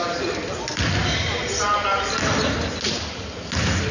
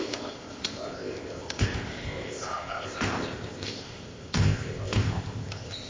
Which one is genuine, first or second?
first